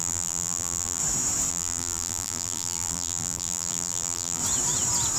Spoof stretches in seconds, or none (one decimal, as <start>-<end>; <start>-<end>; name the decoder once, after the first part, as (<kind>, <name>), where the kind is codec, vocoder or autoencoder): 0.0-1.0 (vocoder, BigVGAN v2); 1.5-4.4